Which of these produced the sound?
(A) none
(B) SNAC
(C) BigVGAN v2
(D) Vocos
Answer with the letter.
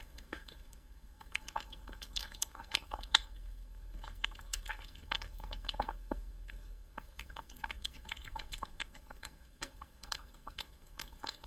B